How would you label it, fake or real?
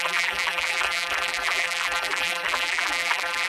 fake